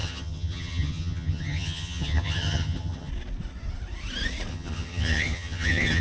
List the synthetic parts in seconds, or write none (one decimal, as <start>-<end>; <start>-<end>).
0.0-3.1; 4.5-6.0